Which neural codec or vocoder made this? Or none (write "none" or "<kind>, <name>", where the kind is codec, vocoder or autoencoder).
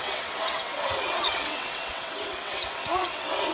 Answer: vocoder, WaveNeXt